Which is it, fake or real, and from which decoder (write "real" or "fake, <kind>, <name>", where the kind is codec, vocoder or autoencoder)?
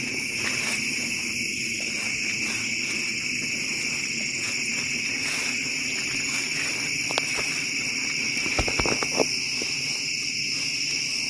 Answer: real